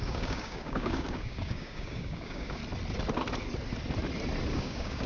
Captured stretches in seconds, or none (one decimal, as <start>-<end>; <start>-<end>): 2.6-4.5